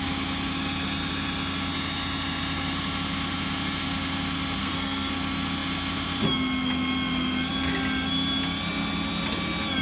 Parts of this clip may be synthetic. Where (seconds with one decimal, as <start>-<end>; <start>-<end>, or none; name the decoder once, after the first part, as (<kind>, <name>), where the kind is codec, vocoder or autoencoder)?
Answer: 4.6-5.1 (codec, SNAC)